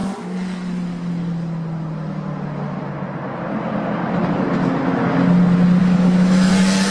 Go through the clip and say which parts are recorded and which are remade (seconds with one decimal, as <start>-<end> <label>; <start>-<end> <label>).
0.0-5.8 recorded; 5.8-6.5 remade; 6.5-6.9 recorded